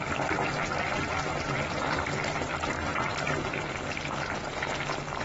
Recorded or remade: recorded